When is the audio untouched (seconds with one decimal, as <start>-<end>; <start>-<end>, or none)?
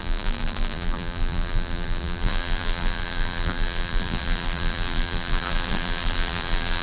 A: none